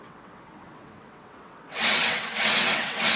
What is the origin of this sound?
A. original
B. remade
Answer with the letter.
B